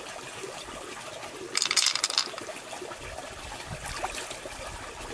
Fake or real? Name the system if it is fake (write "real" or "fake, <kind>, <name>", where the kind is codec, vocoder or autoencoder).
fake, vocoder, BigVGAN v2